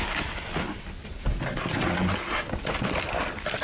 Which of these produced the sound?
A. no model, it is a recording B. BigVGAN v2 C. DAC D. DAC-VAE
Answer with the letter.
A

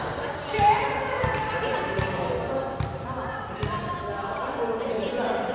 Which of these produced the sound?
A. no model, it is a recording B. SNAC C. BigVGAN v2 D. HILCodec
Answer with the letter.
A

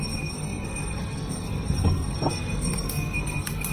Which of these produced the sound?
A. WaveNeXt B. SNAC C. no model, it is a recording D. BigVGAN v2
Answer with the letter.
B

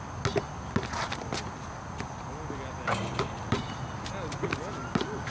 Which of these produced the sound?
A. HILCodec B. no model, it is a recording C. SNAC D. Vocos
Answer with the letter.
B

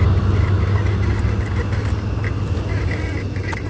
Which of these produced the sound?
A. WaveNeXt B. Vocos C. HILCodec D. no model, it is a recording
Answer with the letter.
D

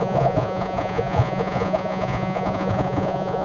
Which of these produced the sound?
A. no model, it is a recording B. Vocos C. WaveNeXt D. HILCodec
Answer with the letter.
B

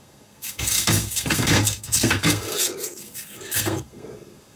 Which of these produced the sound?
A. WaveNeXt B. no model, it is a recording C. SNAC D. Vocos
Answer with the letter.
C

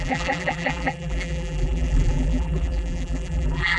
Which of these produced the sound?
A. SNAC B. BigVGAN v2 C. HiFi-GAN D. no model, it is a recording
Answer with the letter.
B